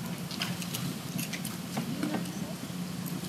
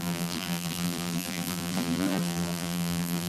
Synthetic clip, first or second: second